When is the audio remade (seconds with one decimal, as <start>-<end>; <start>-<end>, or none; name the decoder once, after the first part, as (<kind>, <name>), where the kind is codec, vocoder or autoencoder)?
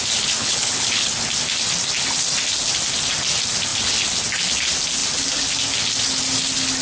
0.4-1.1 (codec, HILCodec)